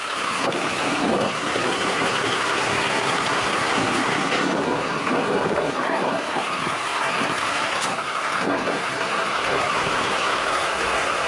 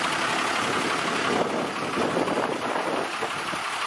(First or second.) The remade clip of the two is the first